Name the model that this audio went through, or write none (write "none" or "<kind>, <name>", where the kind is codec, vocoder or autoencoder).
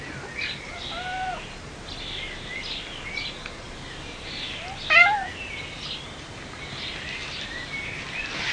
none